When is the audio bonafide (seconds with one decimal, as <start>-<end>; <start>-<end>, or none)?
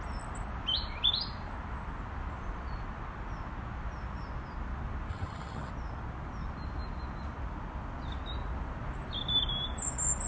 0.0-5.1; 5.7-10.3